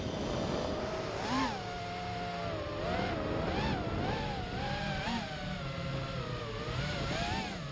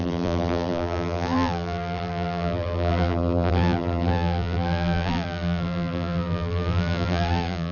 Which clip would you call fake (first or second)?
second